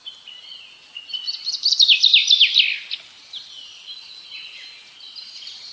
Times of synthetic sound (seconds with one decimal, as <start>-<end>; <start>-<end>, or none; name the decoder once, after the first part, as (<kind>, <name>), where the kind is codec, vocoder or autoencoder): none